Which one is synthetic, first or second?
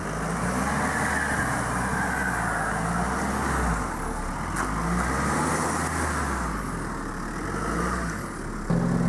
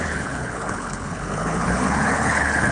second